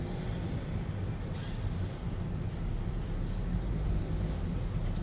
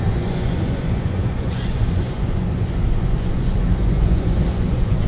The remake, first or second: second